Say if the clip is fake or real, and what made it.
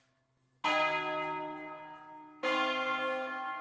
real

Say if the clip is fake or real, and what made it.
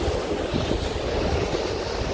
real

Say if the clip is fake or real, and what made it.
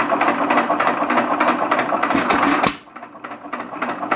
real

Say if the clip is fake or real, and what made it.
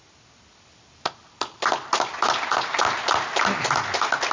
real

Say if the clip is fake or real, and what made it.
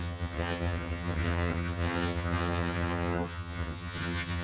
fake, vocoder, HiFi-GAN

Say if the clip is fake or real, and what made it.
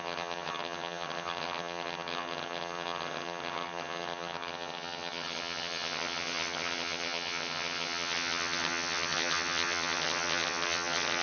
fake, vocoder, HiFi-GAN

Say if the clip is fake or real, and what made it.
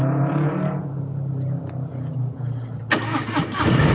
real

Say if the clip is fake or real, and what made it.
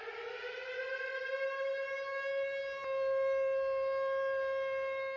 real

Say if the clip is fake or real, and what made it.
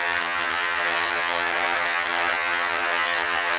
fake, vocoder, HiFi-GAN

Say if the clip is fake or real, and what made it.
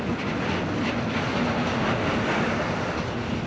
real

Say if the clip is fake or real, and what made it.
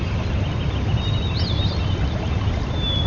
real